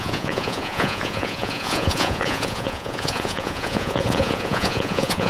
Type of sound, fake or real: fake